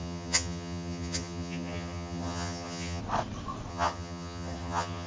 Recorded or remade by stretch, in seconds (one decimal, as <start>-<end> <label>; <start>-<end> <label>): 0.0-3.0 remade; 3.0-3.7 recorded; 3.7-5.1 remade